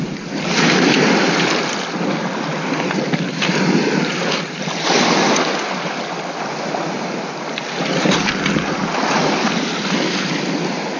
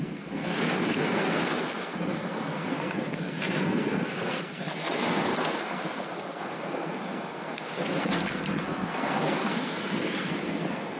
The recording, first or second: first